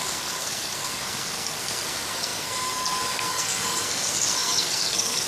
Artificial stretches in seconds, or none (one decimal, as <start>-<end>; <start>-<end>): 0.0-5.3